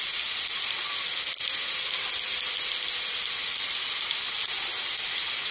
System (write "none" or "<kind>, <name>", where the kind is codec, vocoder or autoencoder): none